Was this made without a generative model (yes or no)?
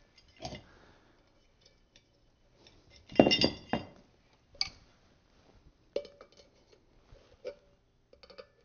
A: yes